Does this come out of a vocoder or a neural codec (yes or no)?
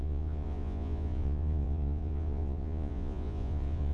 yes